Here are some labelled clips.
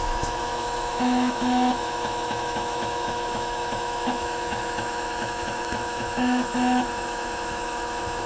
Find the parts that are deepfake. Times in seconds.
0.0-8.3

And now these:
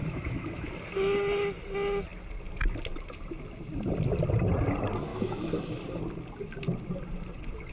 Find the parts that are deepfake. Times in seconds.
0.0-0.7; 5.1-5.6

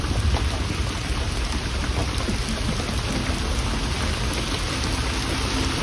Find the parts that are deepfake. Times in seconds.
none

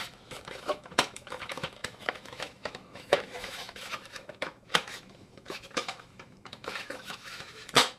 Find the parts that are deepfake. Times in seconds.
0.0-8.0

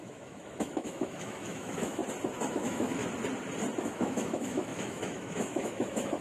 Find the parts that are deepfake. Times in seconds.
0.0-2.0; 2.5-3.0; 3.8-6.2

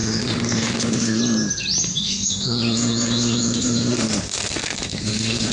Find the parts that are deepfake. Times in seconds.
0.0-1.2; 1.9-5.5

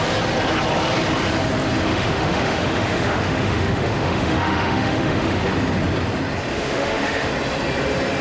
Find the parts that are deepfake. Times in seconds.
1.9-5.4; 6.5-7.3